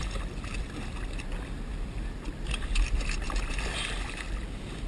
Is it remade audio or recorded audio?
recorded